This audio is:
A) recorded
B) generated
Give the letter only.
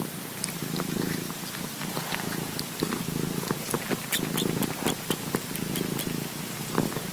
A